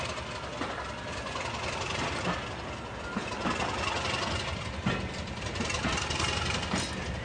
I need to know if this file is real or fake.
real